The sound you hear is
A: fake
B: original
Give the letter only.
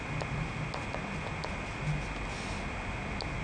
B